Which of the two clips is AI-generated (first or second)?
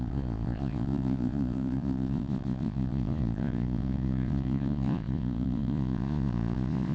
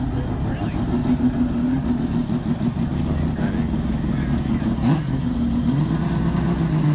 first